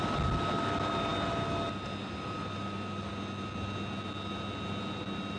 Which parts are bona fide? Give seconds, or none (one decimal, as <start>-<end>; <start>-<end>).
0.0-5.4